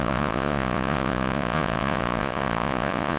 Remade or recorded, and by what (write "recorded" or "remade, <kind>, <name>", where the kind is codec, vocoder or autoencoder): remade, vocoder, Vocos